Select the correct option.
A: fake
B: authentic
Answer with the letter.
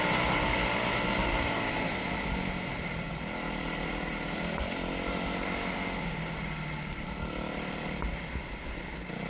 B